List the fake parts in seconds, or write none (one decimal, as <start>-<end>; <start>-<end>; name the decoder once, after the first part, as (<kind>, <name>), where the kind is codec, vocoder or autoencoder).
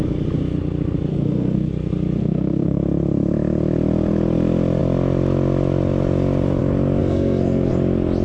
1.1-1.7 (codec, SNAC); 2.2-2.8; 7.0-7.7